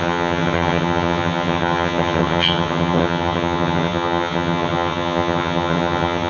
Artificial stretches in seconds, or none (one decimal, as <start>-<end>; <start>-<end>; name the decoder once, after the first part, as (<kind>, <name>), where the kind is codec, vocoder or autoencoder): 0.0-6.3 (vocoder, HiFi-GAN)